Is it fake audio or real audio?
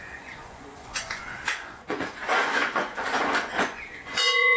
fake